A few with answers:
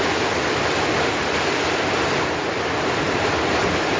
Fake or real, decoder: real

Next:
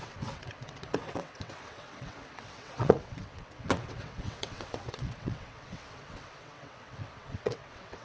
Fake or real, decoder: fake, vocoder, WaveNeXt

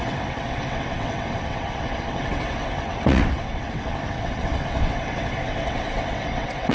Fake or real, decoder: fake, vocoder, WaveNeXt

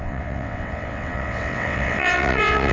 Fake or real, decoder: fake, vocoder, WaveNeXt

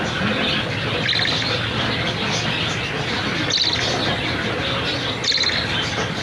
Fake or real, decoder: real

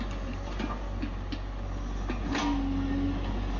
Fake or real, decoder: real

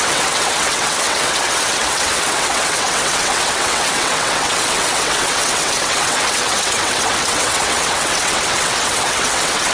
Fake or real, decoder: fake, vocoder, WaveNeXt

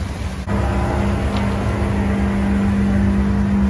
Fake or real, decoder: real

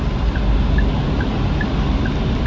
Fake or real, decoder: real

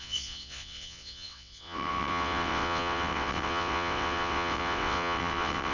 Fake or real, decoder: fake, vocoder, WaveNeXt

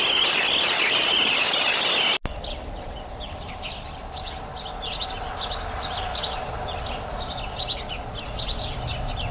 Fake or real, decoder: real